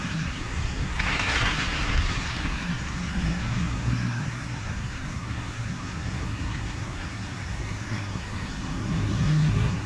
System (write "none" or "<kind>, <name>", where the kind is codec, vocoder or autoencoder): codec, SNAC